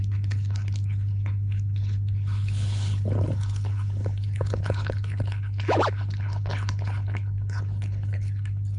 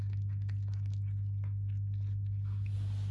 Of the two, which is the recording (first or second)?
second